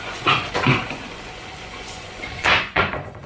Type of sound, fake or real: fake